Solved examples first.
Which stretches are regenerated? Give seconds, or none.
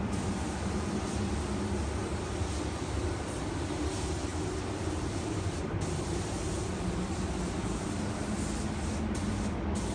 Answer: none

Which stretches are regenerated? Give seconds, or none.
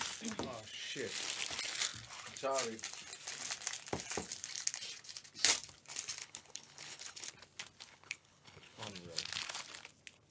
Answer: 6.2-7.3 (codec, HILCodec); 7.9-8.9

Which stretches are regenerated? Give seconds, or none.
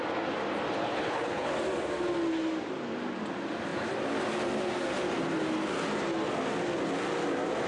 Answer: 0.8-1.5 (codec, HILCodec)